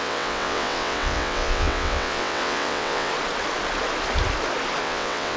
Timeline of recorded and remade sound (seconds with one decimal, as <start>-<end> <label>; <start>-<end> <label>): 0.0-3.1 remade; 3.1-4.8 recorded; 4.8-5.4 remade